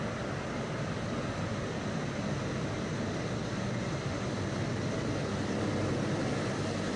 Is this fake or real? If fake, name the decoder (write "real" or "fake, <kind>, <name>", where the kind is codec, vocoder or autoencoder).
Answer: real